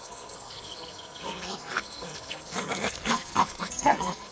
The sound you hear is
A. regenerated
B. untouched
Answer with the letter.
A